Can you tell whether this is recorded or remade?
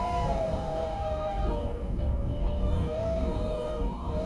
remade